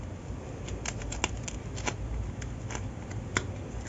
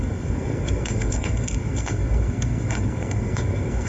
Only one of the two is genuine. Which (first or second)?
first